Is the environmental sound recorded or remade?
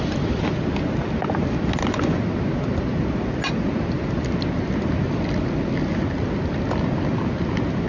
recorded